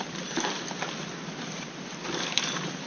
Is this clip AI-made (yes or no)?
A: yes